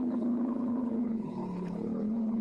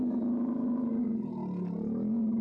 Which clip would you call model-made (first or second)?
first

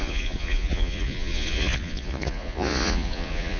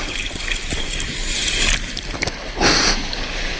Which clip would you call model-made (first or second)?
first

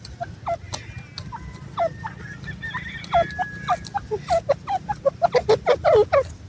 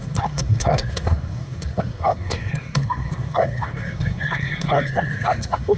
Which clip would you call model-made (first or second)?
second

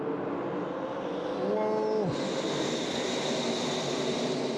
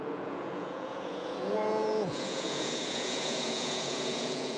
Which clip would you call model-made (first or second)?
second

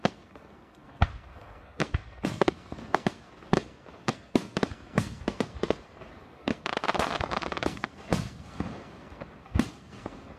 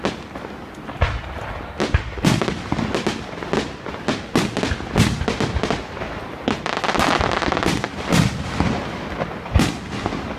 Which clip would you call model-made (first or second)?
first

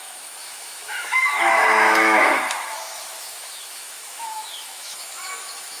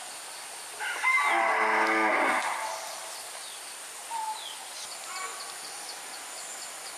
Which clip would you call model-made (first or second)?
first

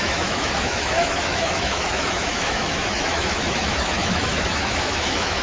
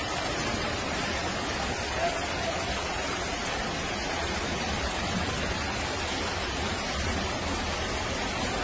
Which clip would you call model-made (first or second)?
first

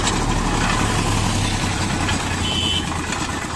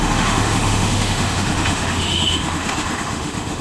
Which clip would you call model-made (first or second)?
second